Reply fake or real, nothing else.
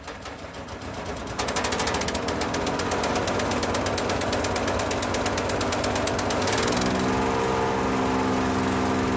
real